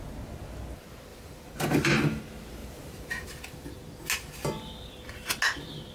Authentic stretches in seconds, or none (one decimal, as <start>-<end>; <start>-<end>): 0.0-1.1; 2.2-2.6; 3.3-5.9